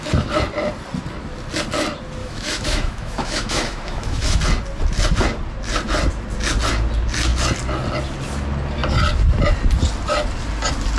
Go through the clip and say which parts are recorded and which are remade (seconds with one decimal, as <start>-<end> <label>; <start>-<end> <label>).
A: 0.0-2.2 recorded; 2.2-4.4 remade; 4.4-11.0 recorded